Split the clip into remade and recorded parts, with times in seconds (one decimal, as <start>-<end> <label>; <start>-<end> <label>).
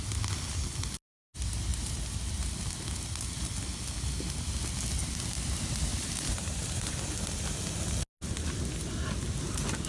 0.0-5.9 recorded; 5.9-6.9 remade; 6.9-9.9 recorded